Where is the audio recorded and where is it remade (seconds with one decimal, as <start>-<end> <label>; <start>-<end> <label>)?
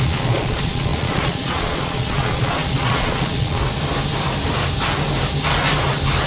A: 0.0-3.6 remade; 3.6-6.3 recorded